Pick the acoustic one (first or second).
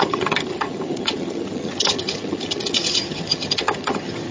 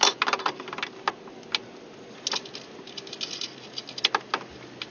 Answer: second